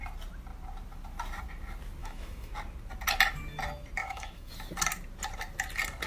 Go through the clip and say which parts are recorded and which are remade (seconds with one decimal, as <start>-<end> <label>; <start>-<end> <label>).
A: 0.0-2.0 recorded; 2.0-2.5 remade; 2.5-4.0 recorded; 4.0-4.5 remade; 4.5-6.1 recorded